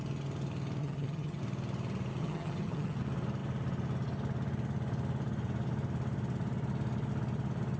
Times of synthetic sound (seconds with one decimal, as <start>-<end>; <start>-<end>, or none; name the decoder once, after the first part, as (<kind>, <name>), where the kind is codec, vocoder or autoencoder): 0.8-1.4 (vocoder, HiFi-GAN); 2.2-3.0

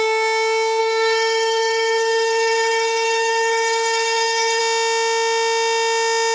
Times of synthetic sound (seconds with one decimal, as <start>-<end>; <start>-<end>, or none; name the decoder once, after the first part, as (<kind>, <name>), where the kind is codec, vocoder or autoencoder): 0.8-4.6 (codec, SNAC)